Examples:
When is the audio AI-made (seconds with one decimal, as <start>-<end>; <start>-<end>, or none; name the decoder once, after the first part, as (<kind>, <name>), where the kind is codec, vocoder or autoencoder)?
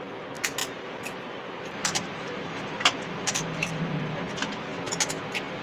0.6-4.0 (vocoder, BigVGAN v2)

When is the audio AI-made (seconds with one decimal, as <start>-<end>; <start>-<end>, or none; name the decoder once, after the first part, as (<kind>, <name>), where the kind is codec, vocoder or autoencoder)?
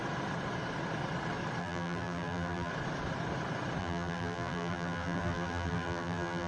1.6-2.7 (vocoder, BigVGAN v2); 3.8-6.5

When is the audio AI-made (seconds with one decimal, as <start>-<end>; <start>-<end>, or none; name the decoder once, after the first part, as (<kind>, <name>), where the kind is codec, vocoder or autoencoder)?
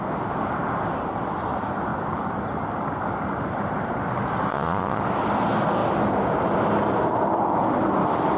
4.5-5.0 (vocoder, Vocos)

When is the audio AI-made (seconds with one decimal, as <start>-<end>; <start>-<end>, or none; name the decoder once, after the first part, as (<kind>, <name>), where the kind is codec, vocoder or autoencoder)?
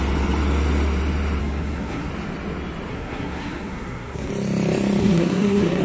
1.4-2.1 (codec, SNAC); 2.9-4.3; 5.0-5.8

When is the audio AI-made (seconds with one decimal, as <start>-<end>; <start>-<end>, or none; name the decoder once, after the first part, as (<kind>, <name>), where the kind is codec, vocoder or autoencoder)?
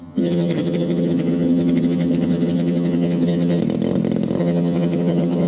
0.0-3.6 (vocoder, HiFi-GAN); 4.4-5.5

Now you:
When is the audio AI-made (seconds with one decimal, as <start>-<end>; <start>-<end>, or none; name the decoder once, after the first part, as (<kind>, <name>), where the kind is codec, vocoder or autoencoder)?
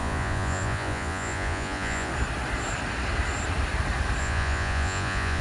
0.0-2.1 (vocoder, Vocos); 4.2-5.4